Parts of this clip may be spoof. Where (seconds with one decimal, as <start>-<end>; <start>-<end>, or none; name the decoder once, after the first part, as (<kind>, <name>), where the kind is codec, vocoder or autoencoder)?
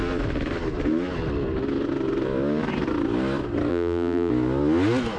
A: 3.7-4.3 (vocoder, BigVGAN v2)